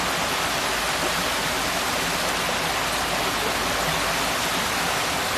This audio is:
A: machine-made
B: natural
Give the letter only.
B